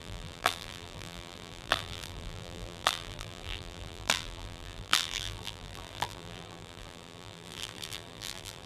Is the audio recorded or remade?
remade